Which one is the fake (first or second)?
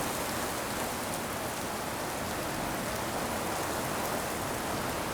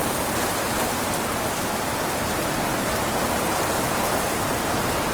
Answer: second